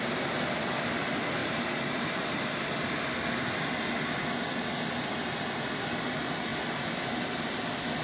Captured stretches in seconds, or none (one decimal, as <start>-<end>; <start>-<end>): 0.0-1.4; 3.0-8.0